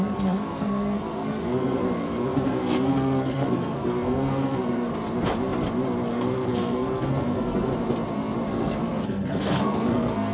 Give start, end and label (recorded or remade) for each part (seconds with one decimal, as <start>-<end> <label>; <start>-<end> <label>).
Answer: 0.0-4.9 remade; 4.9-6.1 recorded; 6.1-7.7 remade; 7.7-8.5 recorded; 8.5-10.3 remade